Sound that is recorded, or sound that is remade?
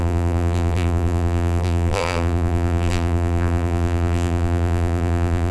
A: remade